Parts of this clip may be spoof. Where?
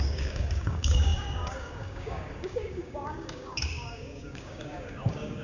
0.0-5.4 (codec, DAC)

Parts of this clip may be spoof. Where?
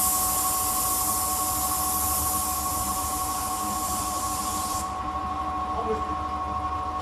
2.7-5.5 (vocoder, BigVGAN v2)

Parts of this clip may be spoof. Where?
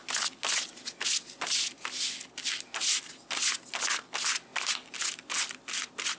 none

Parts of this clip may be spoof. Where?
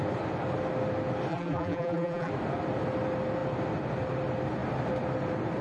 1.3-2.3 (vocoder, BigVGAN v2)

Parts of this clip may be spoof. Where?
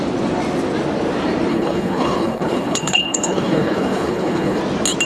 1.5-4.6 (codec, HILCodec)